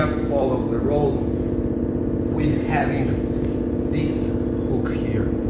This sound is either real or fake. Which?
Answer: fake